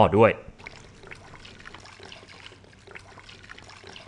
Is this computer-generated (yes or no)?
no